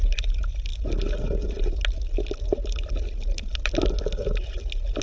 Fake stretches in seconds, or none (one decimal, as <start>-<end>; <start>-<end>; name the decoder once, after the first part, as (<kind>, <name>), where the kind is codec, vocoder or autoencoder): none